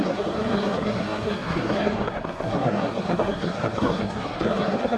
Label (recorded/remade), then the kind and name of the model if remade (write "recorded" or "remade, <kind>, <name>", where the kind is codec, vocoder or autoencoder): remade, codec, SNAC